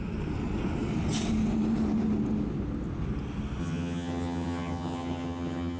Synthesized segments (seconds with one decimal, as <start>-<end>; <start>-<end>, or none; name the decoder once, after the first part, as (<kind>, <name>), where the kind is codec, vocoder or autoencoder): 3.6-5.8 (vocoder, HiFi-GAN)